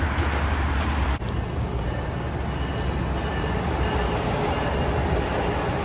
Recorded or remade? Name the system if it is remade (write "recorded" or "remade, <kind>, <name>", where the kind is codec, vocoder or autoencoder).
recorded